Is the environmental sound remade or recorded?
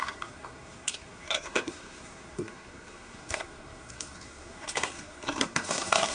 remade